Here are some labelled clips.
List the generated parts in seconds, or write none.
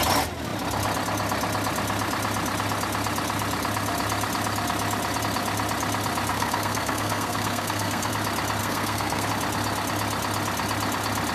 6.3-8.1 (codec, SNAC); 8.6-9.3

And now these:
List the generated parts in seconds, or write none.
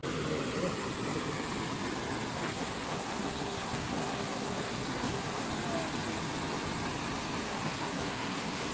2.3-5.5 (codec, SNAC); 7.5-8.7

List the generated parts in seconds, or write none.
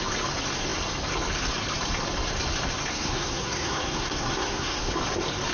2.9-4.9 (codec, SNAC)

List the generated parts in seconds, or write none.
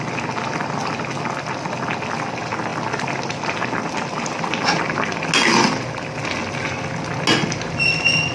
none